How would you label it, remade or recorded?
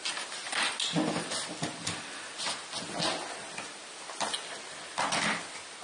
recorded